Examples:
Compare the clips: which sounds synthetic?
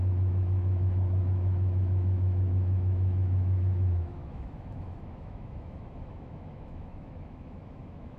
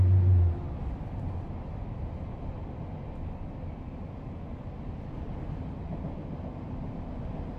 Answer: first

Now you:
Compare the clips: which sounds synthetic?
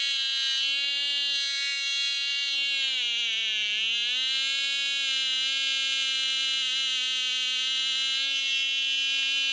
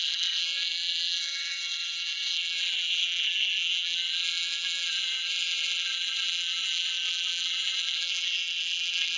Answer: second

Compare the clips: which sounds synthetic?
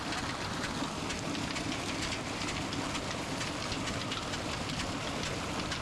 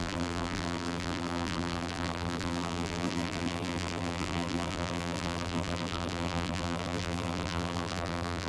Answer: second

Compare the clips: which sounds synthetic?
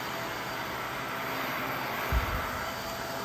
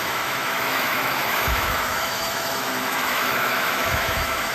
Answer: second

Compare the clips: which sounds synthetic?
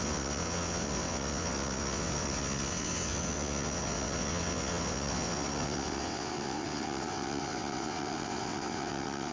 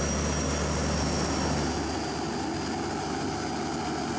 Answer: first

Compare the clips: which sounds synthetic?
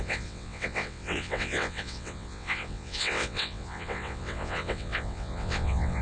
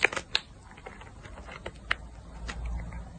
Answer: first